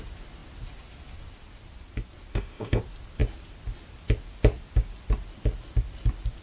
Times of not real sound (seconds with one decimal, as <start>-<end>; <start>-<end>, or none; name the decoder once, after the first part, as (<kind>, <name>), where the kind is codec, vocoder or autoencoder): 2.3-2.8 (autoencoder, DAC-VAE)